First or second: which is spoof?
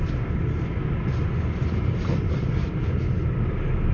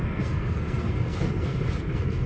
second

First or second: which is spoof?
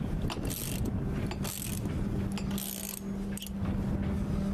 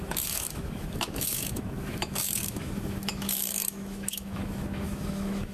second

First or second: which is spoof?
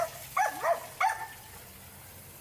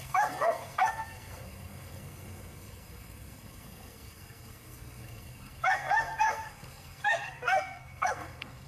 second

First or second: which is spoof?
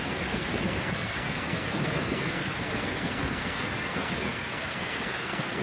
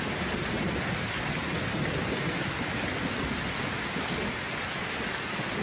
first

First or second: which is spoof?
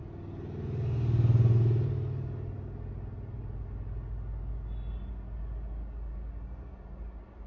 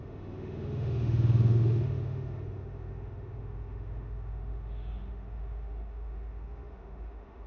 second